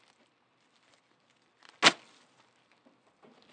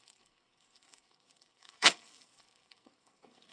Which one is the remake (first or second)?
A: second